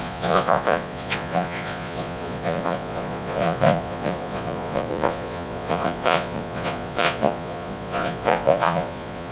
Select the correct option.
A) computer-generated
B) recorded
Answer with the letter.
A